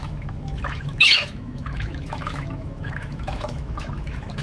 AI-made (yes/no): yes